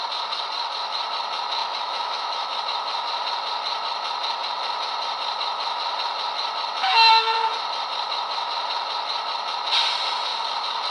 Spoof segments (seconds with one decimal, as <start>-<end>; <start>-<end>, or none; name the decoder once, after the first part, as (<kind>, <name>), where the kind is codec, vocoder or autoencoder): 1.6-2.6 (autoencoder, DAC-VAE)